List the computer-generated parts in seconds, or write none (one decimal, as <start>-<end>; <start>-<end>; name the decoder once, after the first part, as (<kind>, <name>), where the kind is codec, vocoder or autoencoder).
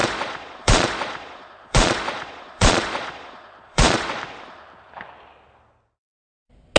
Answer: 0.0-4.1 (vocoder, Vocos)